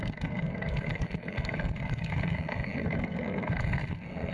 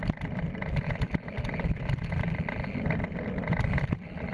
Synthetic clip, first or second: first